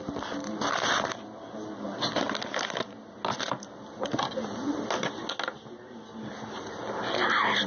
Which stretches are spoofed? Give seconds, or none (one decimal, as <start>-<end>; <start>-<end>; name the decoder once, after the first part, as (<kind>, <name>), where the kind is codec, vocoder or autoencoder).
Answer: none